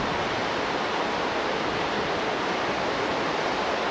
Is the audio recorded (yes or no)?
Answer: yes